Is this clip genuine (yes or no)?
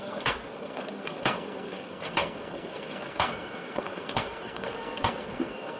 no